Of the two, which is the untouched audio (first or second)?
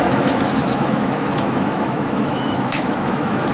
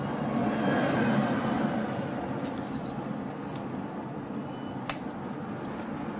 second